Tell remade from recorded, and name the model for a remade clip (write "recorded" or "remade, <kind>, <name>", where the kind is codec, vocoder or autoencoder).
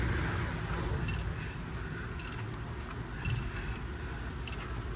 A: recorded